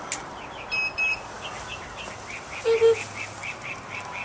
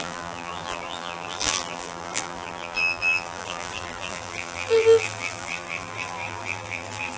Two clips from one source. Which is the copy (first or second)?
second